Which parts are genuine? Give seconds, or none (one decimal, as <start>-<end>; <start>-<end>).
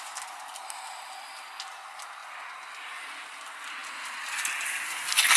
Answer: 0.0-5.4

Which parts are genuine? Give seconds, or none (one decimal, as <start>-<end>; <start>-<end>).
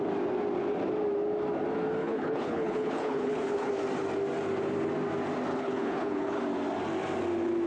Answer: 0.0-2.0; 3.7-5.5; 6.4-7.7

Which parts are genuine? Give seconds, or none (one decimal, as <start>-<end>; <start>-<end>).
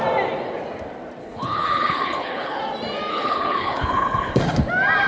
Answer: 0.0-1.2; 2.6-3.1; 4.4-5.1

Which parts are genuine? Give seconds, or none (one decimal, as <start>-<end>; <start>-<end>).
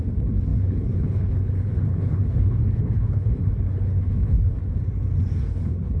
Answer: 4.6-5.5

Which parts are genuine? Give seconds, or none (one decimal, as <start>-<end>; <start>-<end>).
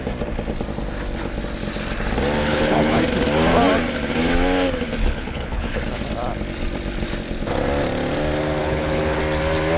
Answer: 0.0-2.4; 3.0-5.0; 5.8-8.6; 9.2-9.8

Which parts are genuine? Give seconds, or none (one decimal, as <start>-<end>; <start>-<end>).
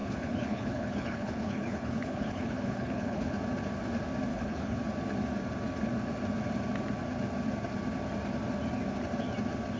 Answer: 3.3-4.3; 4.8-9.8